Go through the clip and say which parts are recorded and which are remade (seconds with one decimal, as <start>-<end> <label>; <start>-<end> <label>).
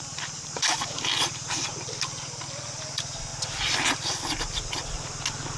0.0-5.6 recorded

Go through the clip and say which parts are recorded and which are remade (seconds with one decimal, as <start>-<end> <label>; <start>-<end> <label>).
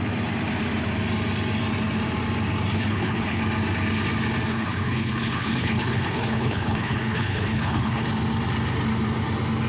0.0-2.7 recorded; 2.7-3.4 remade; 3.4-4.5 recorded; 4.5-8.0 remade; 8.0-9.7 recorded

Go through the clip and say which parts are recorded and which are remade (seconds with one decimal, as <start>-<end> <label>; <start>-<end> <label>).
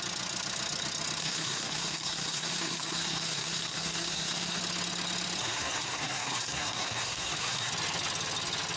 0.0-1.2 recorded; 1.2-4.6 remade; 4.6-5.4 recorded; 5.4-7.7 remade; 7.7-8.8 recorded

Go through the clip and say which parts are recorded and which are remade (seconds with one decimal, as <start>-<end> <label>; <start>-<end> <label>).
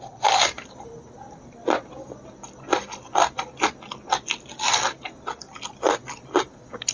0.0-6.9 recorded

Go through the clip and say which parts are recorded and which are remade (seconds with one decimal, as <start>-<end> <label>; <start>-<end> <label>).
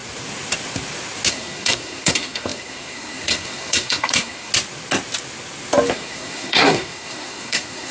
0.0-1.3 recorded; 1.3-4.5 remade; 4.5-5.9 recorded; 5.9-7.9 remade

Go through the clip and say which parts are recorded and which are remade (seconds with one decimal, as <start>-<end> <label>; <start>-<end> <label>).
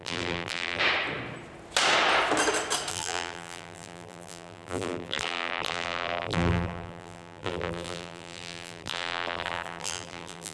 0.0-0.8 remade; 0.8-2.9 recorded; 2.9-10.5 remade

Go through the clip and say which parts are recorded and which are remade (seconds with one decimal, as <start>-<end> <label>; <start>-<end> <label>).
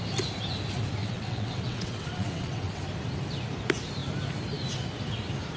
0.0-1.0 recorded; 1.0-2.8 remade; 2.8-5.6 recorded